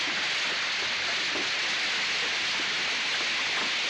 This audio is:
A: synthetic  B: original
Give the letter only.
B